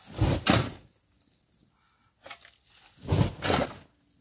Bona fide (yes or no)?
yes